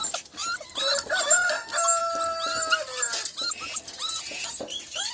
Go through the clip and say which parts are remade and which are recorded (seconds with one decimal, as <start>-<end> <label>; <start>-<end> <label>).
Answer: 0.0-5.1 recorded